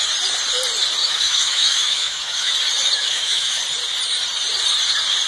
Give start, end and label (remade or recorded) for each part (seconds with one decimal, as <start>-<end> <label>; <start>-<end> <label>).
0.0-1.0 recorded; 1.0-2.5 remade; 2.5-3.0 recorded; 3.0-3.6 remade; 3.6-5.3 recorded